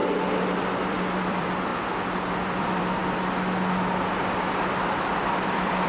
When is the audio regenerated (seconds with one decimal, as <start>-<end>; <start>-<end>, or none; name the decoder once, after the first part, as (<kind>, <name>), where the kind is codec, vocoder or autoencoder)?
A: 0.8-1.7 (vocoder, BigVGAN v2); 2.6-3.0; 4.3-5.9